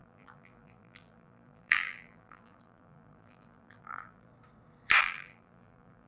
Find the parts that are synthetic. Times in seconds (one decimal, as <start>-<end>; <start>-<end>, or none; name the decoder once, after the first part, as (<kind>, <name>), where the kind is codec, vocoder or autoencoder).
0.0-4.3 (vocoder, BigVGAN v2); 5.0-6.1